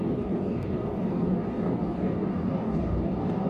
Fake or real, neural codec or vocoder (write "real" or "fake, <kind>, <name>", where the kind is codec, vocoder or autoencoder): fake, codec, DAC